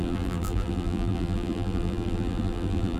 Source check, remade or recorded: remade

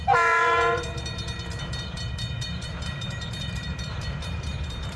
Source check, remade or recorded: remade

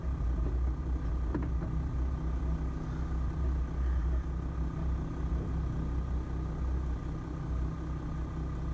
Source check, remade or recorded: recorded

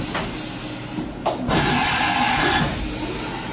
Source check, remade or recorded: recorded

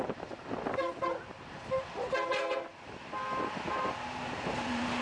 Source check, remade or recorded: remade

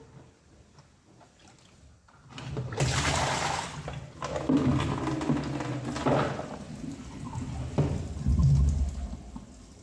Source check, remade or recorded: recorded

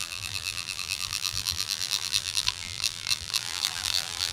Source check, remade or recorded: remade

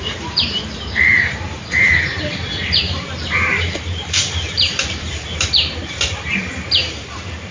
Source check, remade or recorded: remade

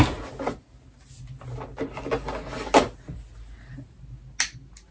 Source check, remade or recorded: recorded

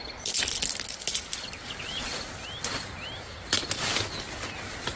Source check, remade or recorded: recorded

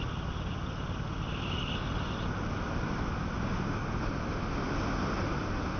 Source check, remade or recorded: recorded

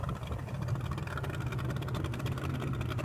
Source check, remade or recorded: recorded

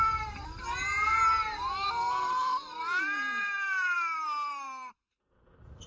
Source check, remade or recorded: remade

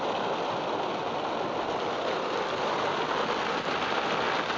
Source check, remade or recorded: recorded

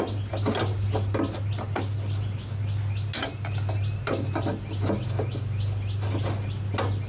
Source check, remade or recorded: recorded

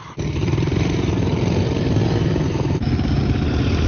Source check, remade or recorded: remade